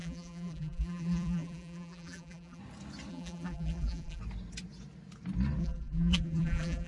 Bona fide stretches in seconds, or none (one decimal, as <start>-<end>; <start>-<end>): 2.6-3.1; 4.2-5.6